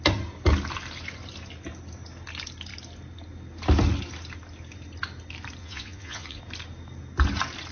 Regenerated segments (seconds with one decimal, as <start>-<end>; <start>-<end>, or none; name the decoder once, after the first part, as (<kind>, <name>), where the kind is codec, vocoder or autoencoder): 5.6-6.4 (vocoder, Vocos)